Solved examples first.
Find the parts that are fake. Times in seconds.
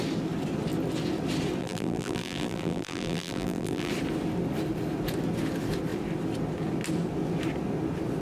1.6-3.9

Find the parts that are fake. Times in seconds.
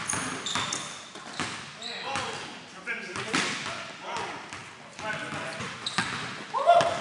none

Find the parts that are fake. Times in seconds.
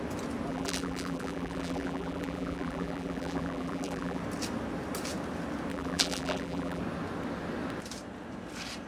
0.5-4.2; 5.7-6.8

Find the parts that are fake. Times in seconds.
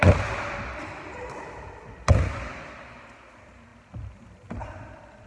none